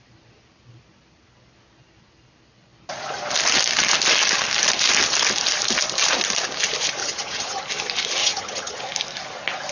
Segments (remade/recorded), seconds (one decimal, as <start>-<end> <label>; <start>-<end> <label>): 0.0-7.0 recorded; 7.0-7.6 remade; 7.6-8.2 recorded; 8.2-8.8 remade; 8.8-9.7 recorded